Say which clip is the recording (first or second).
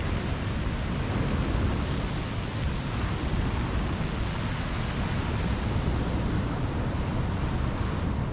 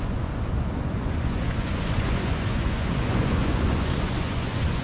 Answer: first